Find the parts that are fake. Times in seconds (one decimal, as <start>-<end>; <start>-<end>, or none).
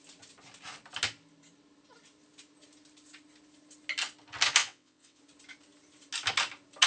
4.6-5.2